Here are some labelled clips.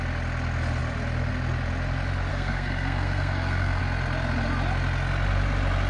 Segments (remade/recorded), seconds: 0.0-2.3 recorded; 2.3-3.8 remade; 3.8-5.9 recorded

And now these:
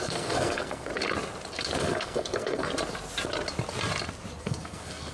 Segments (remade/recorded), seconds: 0.0-0.9 remade; 0.9-1.8 recorded; 1.8-2.7 remade; 2.7-4.4 recorded; 4.4-5.1 remade

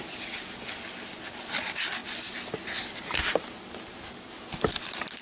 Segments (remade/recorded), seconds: 0.0-5.2 recorded

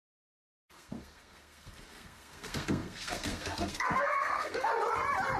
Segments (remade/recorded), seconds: 0.0-4.7 remade; 4.7-5.4 recorded

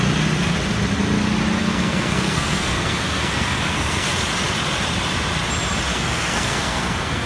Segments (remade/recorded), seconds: 0.0-1.6 recorded; 1.6-4.1 remade; 4.1-5.9 recorded; 5.9-7.3 remade